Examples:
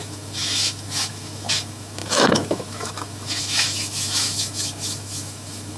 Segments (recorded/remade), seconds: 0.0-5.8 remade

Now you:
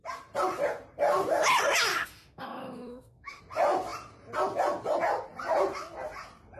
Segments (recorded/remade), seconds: 0.0-1.9 recorded; 1.9-3.4 remade; 3.4-6.6 recorded

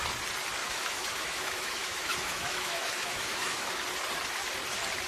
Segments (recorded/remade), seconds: 0.0-0.6 recorded; 0.6-3.7 remade; 3.7-5.1 recorded

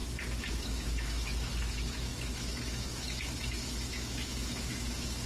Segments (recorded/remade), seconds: 0.0-0.5 recorded; 0.5-5.3 remade

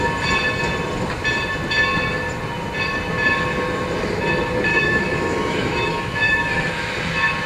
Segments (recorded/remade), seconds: 0.0-4.7 recorded; 4.7-6.7 remade; 6.7-7.5 recorded

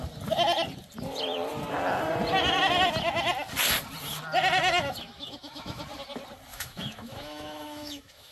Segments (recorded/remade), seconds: 0.0-4.6 recorded; 4.6-5.8 remade; 5.8-6.5 recorded; 6.5-8.3 remade

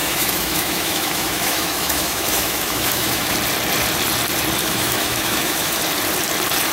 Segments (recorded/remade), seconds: 0.0-3.3 remade; 3.3-4.6 recorded; 4.6-5.8 remade; 5.8-6.7 recorded

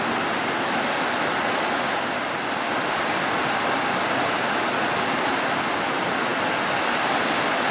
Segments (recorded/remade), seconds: 0.0-7.7 recorded